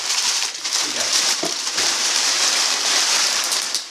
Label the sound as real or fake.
fake